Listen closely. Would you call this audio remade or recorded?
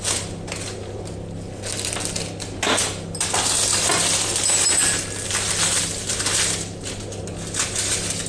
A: recorded